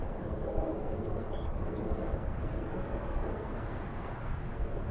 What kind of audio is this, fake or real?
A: fake